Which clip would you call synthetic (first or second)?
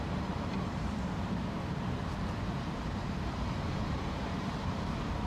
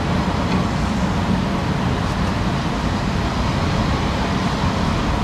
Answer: first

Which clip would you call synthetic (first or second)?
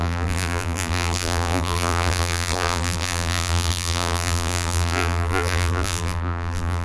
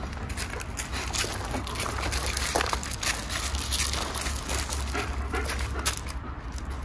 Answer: first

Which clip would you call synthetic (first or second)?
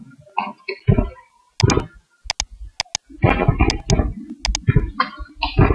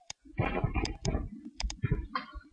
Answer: second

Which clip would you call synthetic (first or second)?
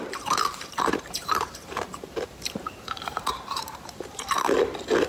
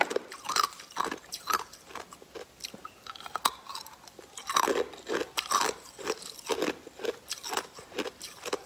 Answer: first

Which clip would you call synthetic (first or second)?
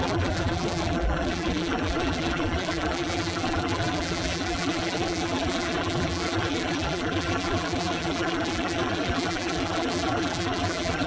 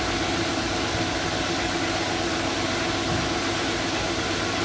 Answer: first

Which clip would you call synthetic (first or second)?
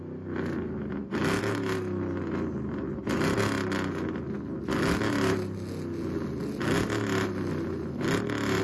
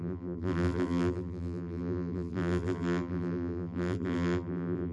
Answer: second